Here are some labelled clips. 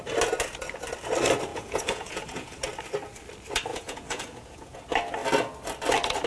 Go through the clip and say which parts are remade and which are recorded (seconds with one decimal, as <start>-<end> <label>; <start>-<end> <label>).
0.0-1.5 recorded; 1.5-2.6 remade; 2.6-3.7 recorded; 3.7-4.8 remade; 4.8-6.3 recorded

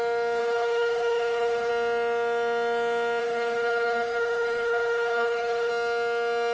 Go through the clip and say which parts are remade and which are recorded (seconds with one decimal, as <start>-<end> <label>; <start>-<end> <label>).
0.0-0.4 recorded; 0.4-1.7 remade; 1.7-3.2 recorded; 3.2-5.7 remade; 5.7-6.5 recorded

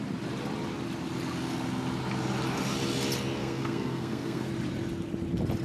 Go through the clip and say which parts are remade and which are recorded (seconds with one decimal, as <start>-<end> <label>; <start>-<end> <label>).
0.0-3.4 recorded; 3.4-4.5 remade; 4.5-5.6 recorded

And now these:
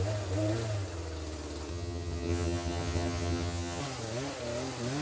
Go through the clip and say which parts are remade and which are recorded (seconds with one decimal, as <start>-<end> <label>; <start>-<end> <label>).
0.0-1.7 recorded; 1.7-3.8 remade; 3.8-5.0 recorded

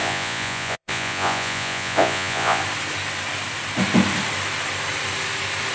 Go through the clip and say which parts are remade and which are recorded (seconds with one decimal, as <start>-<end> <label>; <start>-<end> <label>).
0.0-2.6 remade; 2.6-5.7 recorded

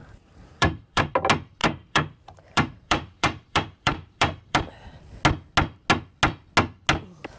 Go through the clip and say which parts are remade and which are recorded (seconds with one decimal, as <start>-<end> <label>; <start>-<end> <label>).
0.0-1.1 remade; 1.1-1.6 recorded; 1.6-4.7 remade; 4.7-7.4 recorded

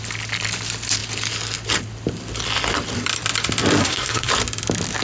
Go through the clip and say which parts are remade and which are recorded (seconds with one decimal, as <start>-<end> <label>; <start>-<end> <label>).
0.0-3.8 recorded; 3.8-4.3 remade; 4.3-5.0 recorded